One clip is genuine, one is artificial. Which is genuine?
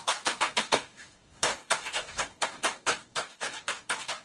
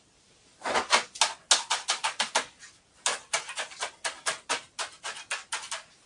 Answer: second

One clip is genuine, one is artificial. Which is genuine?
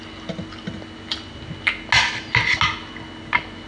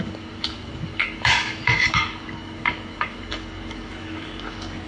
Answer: first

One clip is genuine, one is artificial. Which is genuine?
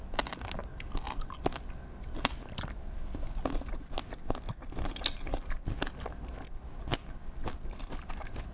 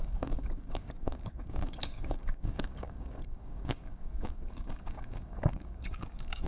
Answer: first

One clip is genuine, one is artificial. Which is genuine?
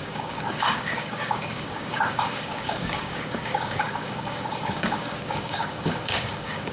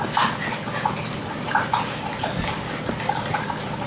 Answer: second